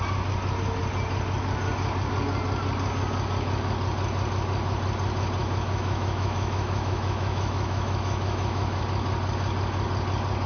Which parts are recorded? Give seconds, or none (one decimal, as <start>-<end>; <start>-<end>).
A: 0.0-5.4; 8.8-10.5